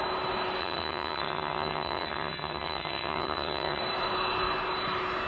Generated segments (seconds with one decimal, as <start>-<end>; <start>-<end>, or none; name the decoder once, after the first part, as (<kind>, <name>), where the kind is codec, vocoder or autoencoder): 0.6-3.8 (vocoder, HiFi-GAN)